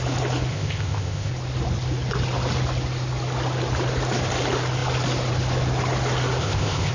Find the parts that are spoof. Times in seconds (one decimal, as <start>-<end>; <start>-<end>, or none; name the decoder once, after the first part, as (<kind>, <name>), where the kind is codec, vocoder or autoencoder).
0.5-1.3 (codec, ZipCodec); 6.4-6.9